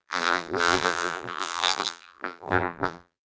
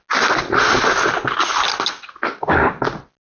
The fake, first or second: first